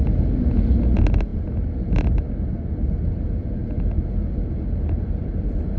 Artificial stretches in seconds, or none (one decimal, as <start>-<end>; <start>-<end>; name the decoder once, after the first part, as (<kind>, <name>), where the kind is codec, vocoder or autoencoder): none